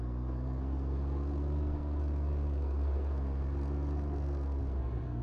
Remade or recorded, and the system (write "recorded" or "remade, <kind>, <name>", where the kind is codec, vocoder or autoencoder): remade, codec, SNAC